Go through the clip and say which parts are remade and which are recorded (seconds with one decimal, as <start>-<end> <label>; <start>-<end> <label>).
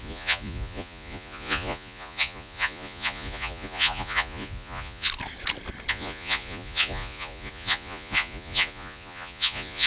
0.0-5.1 remade; 5.1-5.9 recorded; 5.9-9.9 remade